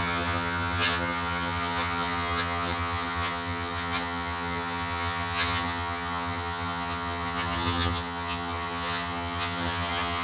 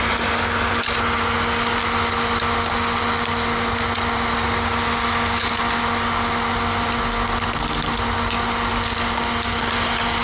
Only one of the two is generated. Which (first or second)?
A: first